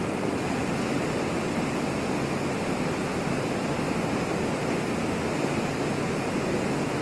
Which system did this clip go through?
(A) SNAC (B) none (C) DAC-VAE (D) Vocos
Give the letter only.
B